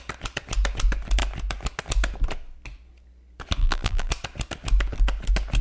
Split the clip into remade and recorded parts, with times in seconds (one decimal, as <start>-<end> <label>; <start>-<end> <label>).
0.0-3.6 recorded; 3.6-4.1 remade; 4.1-5.6 recorded